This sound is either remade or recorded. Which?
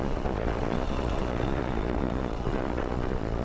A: remade